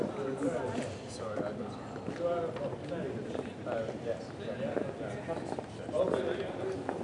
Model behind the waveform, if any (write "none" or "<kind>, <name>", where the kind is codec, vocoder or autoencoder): none